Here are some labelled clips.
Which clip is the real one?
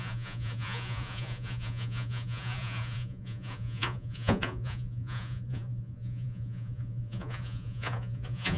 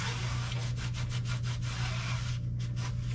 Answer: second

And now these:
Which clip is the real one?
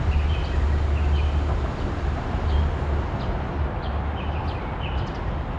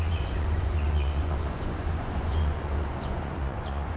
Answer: first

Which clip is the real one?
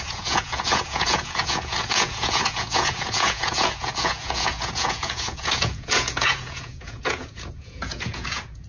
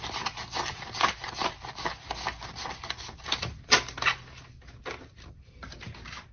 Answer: second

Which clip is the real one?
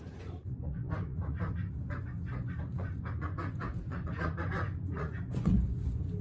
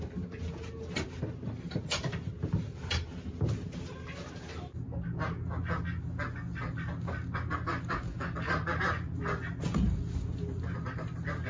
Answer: second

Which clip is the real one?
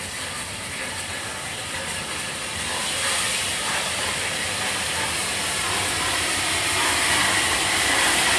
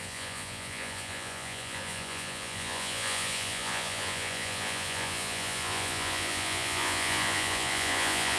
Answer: first